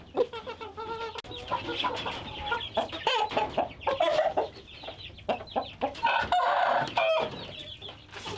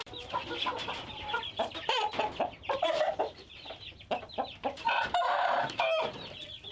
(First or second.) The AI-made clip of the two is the second